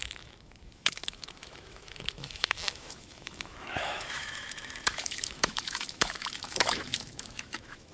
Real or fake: fake